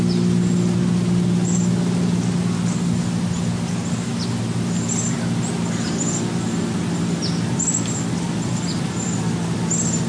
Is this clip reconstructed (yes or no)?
no